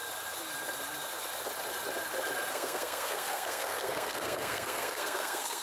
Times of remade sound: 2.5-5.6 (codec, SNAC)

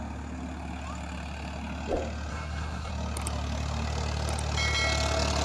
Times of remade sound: 2.3-2.9 (codec, SNAC)